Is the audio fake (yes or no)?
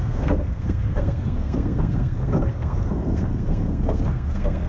yes